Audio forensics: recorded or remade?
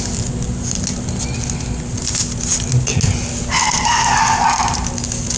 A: recorded